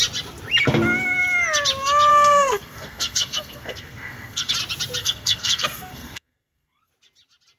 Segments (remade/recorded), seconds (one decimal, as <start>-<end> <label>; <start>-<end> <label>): 0.0-2.1 recorded; 2.1-4.5 remade; 4.5-5.0 recorded; 5.0-6.9 remade; 6.9-7.6 recorded